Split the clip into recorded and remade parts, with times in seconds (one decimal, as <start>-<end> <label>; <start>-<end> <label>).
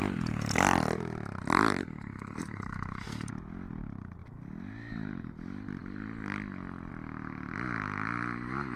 0.0-1.8 recorded; 1.8-3.3 remade; 3.3-8.8 recorded